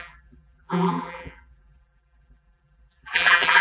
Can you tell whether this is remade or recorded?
remade